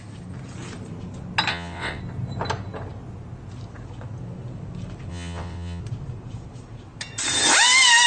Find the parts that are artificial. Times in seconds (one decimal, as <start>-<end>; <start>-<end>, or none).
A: 1.5-2.0; 5.1-5.8